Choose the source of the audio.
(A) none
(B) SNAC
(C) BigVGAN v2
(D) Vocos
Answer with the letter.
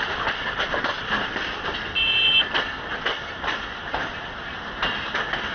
A